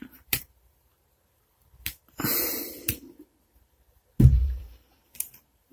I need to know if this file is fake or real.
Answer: fake